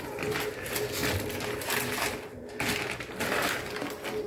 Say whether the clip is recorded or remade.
recorded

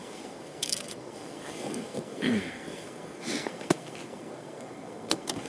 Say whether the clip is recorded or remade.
remade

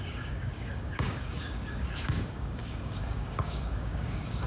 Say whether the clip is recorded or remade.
remade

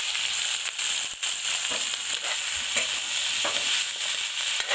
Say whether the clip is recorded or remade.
recorded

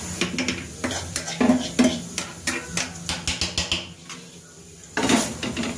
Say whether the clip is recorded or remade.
recorded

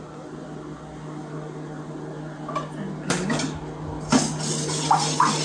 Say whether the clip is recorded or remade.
recorded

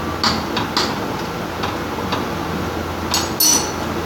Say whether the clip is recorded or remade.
recorded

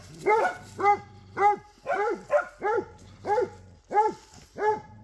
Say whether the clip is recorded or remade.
recorded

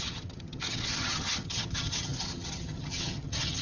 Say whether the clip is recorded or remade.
remade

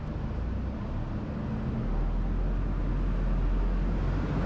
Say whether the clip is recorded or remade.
recorded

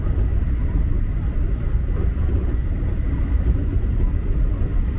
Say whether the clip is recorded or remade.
recorded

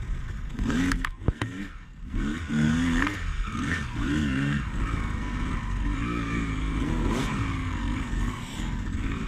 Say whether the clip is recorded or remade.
remade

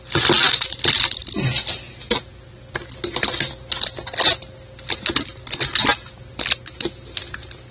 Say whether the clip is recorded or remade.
recorded